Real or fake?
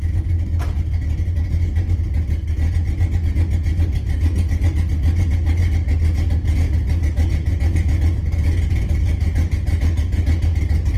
real